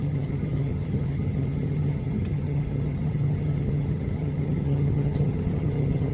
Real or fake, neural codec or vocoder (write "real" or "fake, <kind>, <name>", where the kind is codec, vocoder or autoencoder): fake, vocoder, HiFi-GAN